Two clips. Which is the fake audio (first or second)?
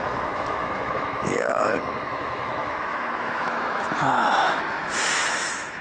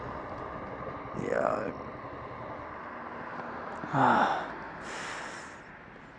first